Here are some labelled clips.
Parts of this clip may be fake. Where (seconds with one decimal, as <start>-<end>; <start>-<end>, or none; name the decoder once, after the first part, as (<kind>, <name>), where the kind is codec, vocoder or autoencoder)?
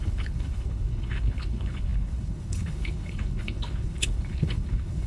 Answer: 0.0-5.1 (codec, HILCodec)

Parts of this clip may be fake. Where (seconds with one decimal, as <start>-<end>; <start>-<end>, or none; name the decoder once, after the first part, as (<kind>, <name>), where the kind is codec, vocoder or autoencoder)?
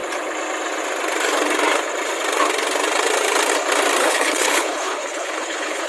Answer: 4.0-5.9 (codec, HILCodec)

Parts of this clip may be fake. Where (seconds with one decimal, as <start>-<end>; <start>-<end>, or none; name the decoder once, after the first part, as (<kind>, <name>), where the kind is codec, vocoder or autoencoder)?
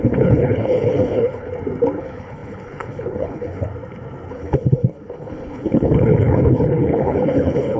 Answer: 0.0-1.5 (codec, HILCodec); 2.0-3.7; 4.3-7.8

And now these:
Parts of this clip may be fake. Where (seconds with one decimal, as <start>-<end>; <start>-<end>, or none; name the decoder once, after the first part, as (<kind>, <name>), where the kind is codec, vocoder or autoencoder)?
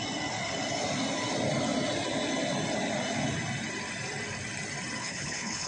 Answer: 5.0-5.7 (codec, HILCodec)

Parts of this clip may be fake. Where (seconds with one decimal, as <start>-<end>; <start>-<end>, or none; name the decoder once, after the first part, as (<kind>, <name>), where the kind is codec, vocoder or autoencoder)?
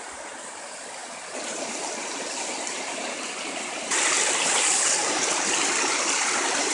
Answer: none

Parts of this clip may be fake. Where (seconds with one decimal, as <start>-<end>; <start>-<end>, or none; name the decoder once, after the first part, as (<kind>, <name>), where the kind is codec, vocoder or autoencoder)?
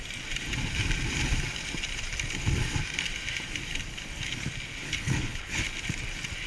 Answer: 4.8-5.6 (codec, HILCodec)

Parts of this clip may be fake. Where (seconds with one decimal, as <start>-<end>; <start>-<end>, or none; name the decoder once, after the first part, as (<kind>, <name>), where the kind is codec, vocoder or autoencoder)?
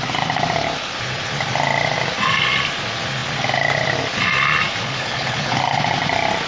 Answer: 4.8-5.6 (codec, HILCodec)